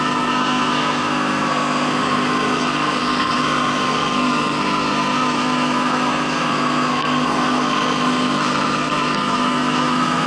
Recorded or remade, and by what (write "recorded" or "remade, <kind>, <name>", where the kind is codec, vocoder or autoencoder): remade, codec, SNAC